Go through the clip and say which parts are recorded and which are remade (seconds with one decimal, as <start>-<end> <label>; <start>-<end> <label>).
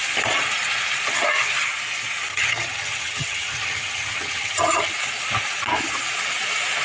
0.0-2.3 recorded; 2.3-4.9 remade; 4.9-6.8 recorded